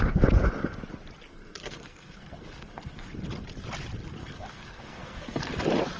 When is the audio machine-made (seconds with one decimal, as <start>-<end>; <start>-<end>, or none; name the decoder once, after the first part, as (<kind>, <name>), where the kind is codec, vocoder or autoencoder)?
1.3-3.1 (codec, SNAC); 4.2-5.6